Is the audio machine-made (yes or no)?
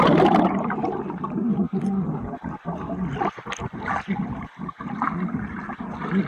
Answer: no